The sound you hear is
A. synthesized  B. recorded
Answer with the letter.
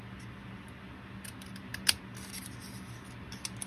B